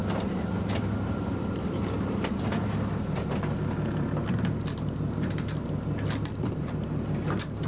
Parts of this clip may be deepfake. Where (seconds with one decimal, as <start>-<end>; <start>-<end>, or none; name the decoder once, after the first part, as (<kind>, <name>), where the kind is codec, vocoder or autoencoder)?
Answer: 0.0-2.4 (vocoder, BigVGAN v2)